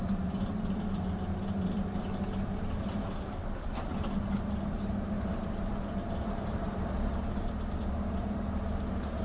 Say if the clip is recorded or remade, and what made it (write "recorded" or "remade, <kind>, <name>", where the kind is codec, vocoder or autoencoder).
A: remade, vocoder, BigVGAN v2